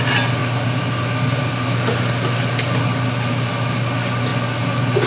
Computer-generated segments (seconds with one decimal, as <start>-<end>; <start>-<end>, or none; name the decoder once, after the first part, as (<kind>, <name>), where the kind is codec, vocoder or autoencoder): none